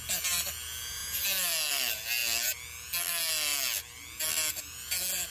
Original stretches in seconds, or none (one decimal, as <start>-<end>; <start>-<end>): 0.0-5.3